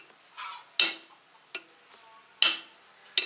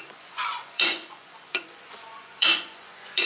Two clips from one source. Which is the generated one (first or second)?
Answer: second